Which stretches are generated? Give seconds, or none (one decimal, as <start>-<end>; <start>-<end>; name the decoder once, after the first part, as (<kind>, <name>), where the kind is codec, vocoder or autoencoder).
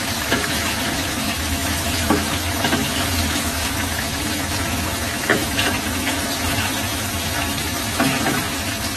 0.0-9.0 (autoencoder, DAC-VAE)